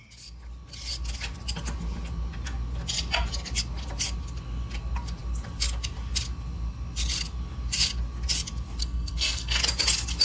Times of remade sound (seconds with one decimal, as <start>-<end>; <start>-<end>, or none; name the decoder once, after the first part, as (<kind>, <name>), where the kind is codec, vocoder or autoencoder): 8.8-9.6 (codec, SNAC)